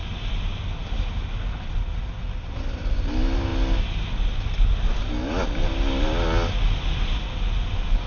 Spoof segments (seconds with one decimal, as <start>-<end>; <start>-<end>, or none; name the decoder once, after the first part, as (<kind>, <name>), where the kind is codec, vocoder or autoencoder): none